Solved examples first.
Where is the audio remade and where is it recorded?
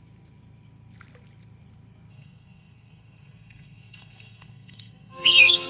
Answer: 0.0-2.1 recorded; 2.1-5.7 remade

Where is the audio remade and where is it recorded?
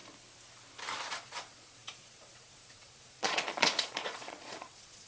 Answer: 0.0-1.1 recorded; 1.1-5.1 remade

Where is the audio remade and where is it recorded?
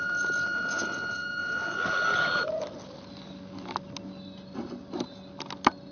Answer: 0.0-5.9 recorded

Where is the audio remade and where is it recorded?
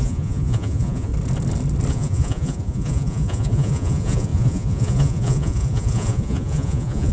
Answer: 0.0-1.1 remade; 1.1-1.9 recorded; 1.9-7.1 remade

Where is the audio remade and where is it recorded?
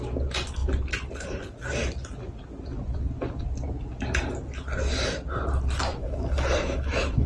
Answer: 0.0-5.9 recorded; 5.9-7.3 remade